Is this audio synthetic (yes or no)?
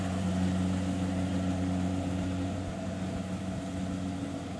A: no